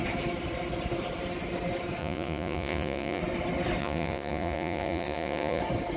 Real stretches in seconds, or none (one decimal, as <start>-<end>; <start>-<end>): 0.0-2.0; 3.2-3.8; 5.6-6.0